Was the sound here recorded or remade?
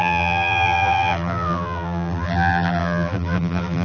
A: remade